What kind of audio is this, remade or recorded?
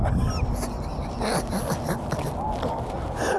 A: recorded